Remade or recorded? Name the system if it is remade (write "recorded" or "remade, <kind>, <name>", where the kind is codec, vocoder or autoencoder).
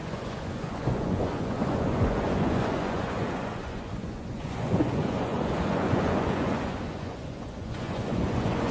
remade, vocoder, Vocos